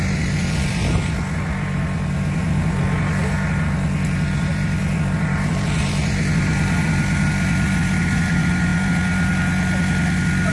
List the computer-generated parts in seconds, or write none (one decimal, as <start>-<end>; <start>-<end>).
0.0-0.8; 4.3-8.7